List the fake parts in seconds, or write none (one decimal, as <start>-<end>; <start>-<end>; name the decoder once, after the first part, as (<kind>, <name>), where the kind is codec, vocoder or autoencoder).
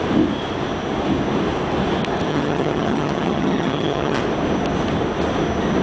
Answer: 2.3-4.2 (vocoder, HiFi-GAN)